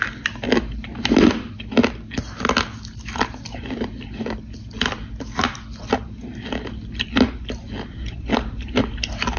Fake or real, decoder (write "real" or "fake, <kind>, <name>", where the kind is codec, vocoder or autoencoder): real